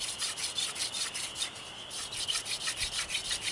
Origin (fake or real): real